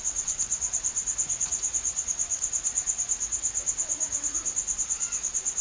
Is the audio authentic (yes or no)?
no